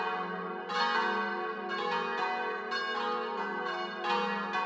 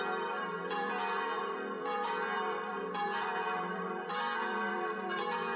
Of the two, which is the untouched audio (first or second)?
first